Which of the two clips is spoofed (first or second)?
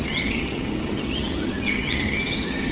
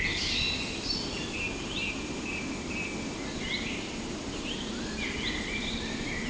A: first